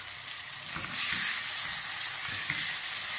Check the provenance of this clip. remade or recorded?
recorded